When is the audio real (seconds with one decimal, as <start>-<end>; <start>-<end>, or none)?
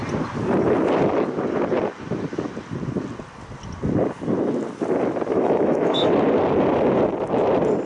0.0-5.3; 6.1-7.9